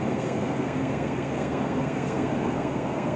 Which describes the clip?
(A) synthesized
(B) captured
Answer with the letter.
A